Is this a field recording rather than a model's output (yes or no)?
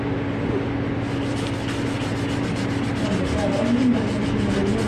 yes